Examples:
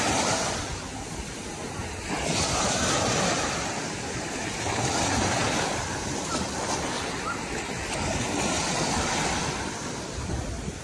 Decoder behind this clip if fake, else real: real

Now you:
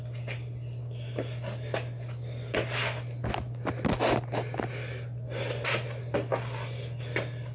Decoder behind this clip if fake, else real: real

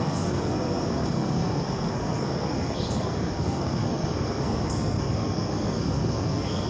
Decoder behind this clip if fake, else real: fake, codec, SNAC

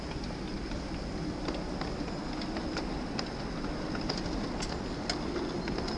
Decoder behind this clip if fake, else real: real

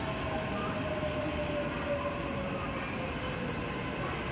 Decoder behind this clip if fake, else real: real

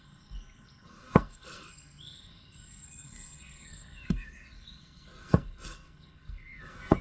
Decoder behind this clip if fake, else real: fake, codec, SNAC